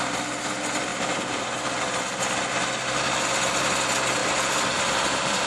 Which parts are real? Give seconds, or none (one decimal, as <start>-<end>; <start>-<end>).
0.0-0.9; 1.8-4.2; 4.8-5.5